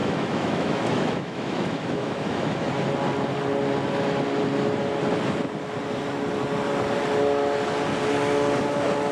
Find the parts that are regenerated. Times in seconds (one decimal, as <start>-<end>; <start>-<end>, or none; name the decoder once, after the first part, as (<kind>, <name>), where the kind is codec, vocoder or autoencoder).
0.0-2.7 (autoencoder, DAC-VAE)